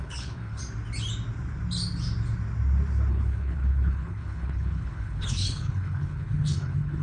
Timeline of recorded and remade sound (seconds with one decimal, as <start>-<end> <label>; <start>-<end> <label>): 0.0-0.6 remade; 0.6-3.1 recorded; 3.1-7.0 remade

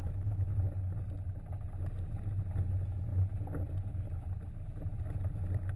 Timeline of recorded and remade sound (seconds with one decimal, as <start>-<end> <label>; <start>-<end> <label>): 0.0-5.8 recorded

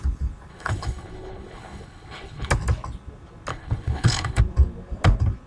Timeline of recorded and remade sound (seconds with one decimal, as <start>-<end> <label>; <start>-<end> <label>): 0.0-0.5 recorded; 0.5-2.5 remade; 2.5-3.5 recorded; 3.5-4.4 remade; 4.4-5.5 recorded

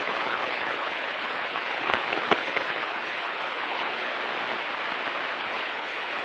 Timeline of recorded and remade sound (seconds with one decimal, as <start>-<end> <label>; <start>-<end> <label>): 0.0-4.1 remade; 4.1-5.4 recorded; 5.4-6.2 remade

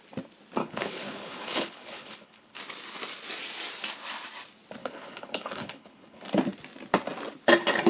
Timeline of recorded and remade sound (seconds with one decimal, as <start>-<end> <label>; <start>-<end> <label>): 0.0-0.6 recorded; 0.6-2.6 remade; 2.6-4.8 recorded; 4.8-6.2 remade; 6.2-7.9 recorded

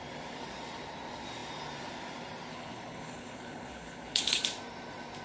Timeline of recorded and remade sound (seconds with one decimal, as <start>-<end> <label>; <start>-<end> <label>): 0.0-2.5 recorded; 2.5-4.4 remade; 4.4-5.2 recorded